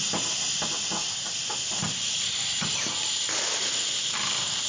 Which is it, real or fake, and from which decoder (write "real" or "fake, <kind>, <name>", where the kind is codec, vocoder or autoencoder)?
real